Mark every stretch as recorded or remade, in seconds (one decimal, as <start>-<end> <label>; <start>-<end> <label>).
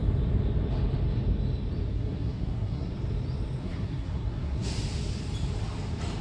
0.0-1.9 recorded; 1.9-2.9 remade; 2.9-3.6 recorded; 3.6-4.7 remade; 4.7-6.2 recorded